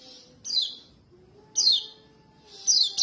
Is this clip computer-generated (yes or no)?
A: no